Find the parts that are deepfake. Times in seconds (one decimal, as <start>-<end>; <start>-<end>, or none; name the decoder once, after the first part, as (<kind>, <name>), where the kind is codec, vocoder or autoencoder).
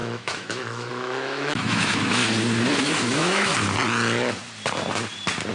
0.0-2.2 (autoencoder, DAC-VAE); 2.8-3.5